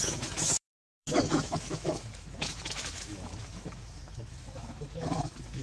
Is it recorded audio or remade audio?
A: remade